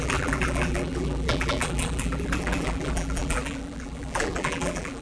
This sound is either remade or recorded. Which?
remade